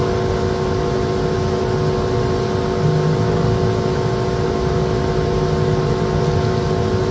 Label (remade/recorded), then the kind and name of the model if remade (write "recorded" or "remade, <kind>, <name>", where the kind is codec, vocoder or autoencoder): recorded